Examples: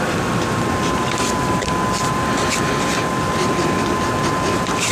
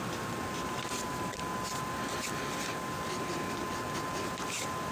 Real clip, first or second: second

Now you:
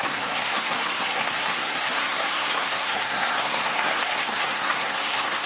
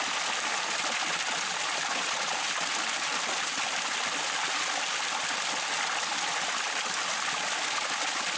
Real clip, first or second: second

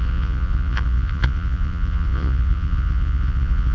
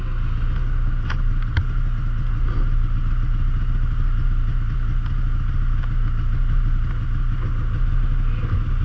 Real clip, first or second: second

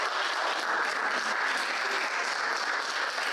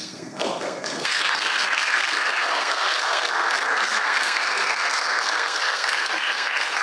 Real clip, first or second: first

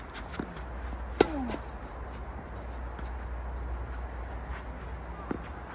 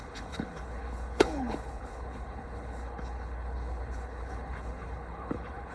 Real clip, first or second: first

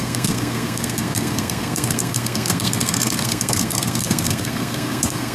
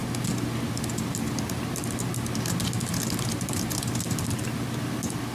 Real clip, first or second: second